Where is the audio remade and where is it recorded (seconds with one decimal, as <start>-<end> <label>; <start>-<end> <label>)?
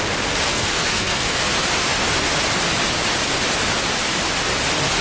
0.0-0.5 recorded; 0.5-1.4 remade; 1.4-5.0 recorded